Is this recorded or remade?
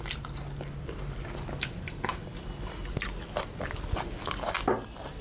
recorded